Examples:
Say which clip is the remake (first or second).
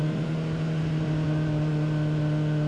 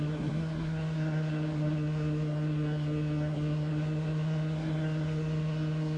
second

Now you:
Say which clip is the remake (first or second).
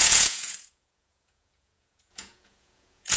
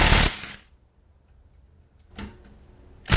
first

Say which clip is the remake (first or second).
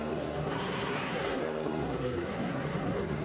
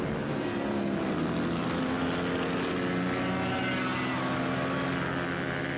first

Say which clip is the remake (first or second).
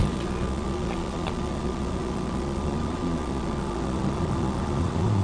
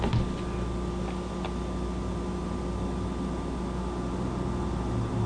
first